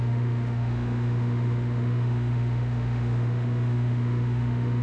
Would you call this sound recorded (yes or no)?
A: no